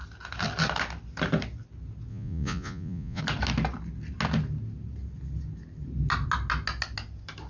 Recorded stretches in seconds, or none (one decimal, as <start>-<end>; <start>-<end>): 0.0-2.1; 3.2-7.5